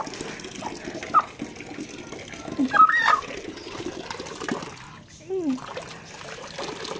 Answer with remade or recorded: recorded